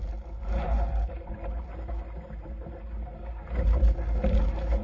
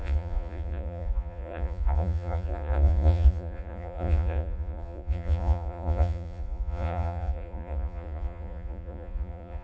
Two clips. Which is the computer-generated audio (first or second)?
second